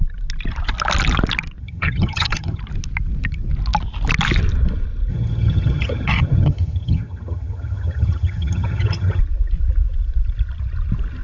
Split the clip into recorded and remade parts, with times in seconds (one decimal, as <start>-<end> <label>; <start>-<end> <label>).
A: 0.0-1.6 recorded; 1.6-2.6 remade; 2.6-5.1 recorded; 5.1-9.2 remade; 9.2-11.2 recorded